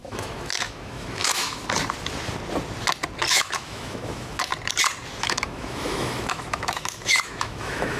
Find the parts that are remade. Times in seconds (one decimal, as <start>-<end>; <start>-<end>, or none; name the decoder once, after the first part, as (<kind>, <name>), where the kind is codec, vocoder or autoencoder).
0.0-1.6 (autoencoder, DAC-VAE); 3.3-4.5; 5.2-8.0